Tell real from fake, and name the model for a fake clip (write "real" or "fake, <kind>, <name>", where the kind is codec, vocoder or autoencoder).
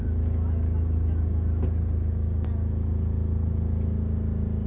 real